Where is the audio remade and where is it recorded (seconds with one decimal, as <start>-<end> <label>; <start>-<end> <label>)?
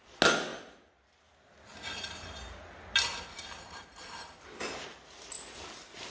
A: 0.0-6.1 recorded